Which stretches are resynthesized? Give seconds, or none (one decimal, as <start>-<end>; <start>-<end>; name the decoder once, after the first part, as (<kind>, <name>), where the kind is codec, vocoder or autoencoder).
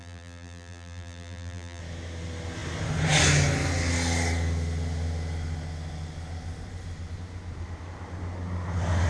0.0-1.8 (vocoder, BigVGAN v2)